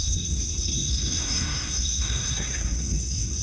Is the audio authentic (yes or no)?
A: no